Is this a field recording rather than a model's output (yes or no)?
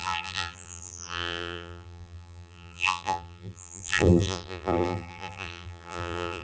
no